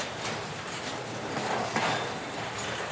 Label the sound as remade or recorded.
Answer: recorded